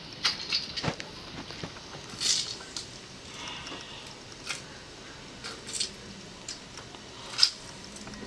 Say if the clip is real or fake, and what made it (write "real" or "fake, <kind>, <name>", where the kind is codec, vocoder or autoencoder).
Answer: real